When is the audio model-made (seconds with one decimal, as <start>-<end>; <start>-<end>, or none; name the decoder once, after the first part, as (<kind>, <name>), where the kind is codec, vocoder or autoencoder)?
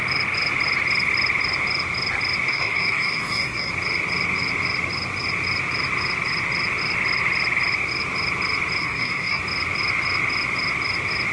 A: 2.5-3.7 (codec, SNAC); 8.8-9.4